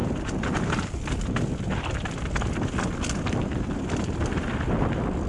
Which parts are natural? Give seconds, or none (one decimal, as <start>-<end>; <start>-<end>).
0.0-5.3